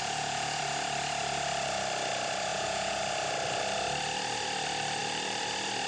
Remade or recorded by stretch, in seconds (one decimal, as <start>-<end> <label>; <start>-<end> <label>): 0.0-0.6 remade; 0.6-2.5 recorded; 2.5-3.0 remade; 3.0-5.9 recorded